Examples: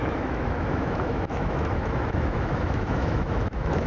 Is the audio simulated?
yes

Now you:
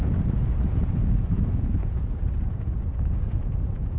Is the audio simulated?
yes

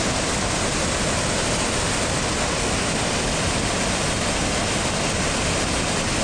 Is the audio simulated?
no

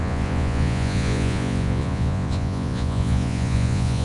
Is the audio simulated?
yes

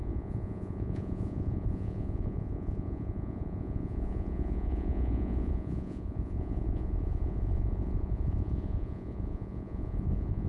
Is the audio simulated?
yes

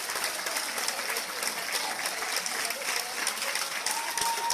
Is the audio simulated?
no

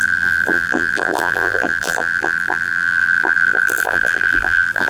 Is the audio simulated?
yes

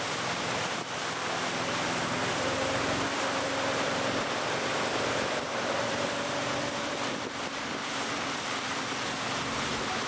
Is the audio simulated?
yes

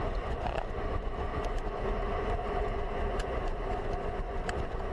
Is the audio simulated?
yes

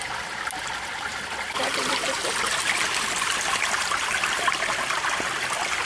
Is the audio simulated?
no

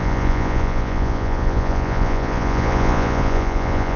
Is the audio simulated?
yes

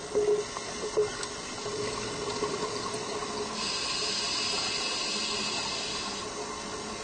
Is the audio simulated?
no